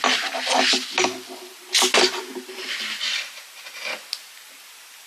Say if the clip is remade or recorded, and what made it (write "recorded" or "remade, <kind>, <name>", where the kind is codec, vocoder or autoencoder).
recorded